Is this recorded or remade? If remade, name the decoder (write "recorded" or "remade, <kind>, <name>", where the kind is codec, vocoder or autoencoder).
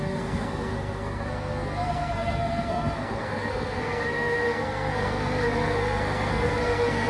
remade, codec, SNAC